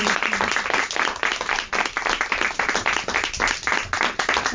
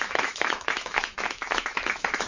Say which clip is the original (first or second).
first